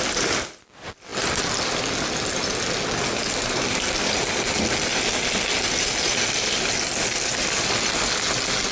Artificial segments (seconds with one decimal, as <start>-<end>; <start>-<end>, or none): none